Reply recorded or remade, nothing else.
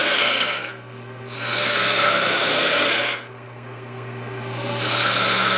remade